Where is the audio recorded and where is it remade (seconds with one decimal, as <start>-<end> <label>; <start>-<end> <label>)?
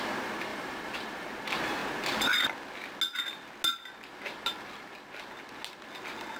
0.0-0.5 recorded; 0.5-1.3 remade; 1.3-6.4 recorded